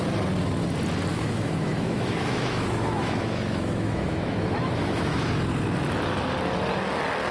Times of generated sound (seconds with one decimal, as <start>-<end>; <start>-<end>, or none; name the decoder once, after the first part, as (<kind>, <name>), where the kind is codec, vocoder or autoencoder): 1.1-5.3 (autoencoder, DAC-VAE)